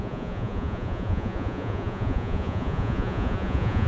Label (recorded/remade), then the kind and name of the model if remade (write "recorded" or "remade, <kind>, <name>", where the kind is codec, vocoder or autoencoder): remade, vocoder, Vocos